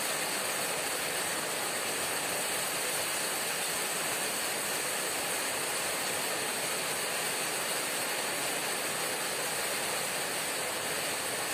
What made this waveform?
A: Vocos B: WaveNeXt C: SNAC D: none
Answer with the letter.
D